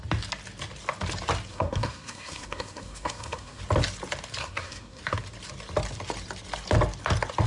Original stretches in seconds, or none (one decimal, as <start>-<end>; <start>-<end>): 0.0-1.5; 3.6-4.4; 5.0-7.5